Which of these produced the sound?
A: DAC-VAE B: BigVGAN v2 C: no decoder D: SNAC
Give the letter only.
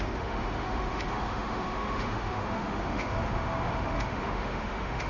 A